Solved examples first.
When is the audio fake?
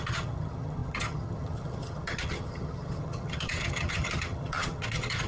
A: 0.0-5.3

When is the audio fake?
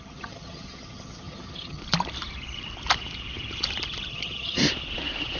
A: 0.0-1.8; 4.1-4.6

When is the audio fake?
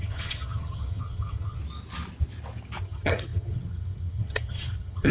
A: 0.0-1.6; 2.8-5.1